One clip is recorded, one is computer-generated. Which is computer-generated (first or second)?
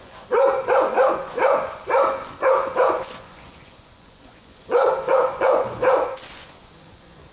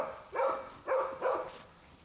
first